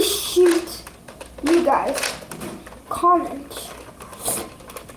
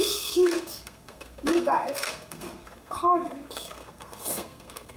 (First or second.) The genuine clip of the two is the first